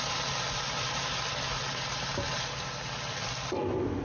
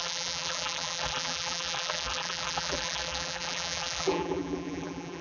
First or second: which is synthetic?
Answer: second